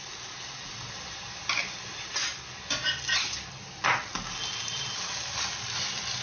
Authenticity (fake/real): real